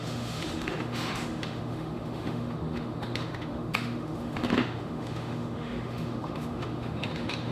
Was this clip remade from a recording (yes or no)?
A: yes